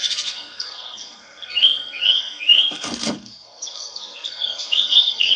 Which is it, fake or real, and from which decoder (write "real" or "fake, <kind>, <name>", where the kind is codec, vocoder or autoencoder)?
fake, codec, SNAC